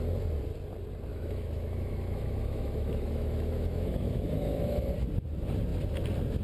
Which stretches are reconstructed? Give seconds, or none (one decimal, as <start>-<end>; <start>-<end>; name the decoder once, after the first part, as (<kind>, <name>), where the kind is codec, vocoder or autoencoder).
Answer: 1.1-4.9 (autoencoder, DAC-VAE)